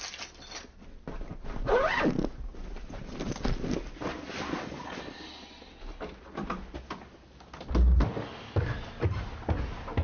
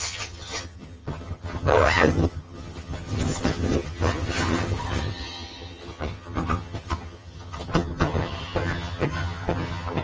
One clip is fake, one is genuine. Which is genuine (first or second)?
first